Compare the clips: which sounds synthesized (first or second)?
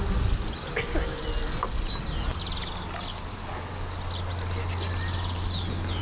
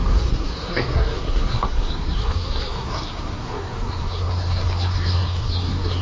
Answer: second